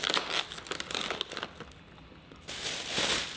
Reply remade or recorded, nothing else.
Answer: recorded